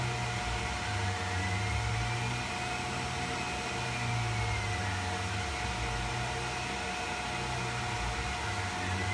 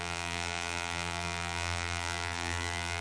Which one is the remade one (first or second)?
second